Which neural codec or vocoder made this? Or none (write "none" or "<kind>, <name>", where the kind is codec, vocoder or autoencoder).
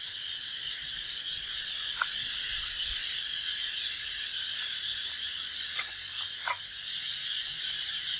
none